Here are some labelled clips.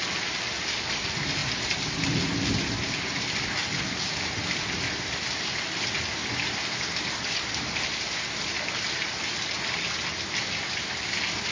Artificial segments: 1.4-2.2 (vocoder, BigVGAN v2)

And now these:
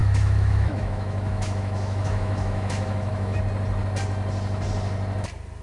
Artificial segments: 0.0-3.4 (autoencoder, DAC-VAE)

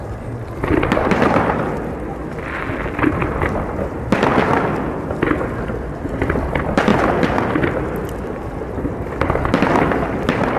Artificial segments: none

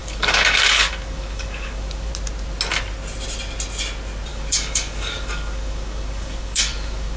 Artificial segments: 0.0-2.1 (codec, DAC); 4.3-7.2

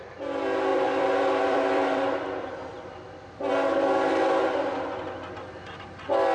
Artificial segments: 0.7-3.5 (vocoder, BigVGAN v2)

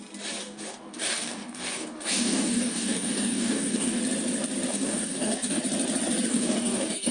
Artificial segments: 0.4-4.0 (codec, DAC); 4.7-5.6; 6.3-7.1

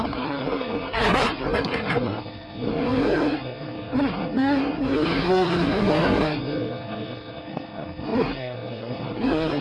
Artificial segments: 0.0-9.6 (codec, SNAC)

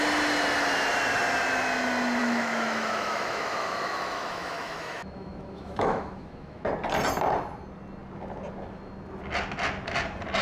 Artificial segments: 2.2-6.7 (autoencoder, DAC-VAE)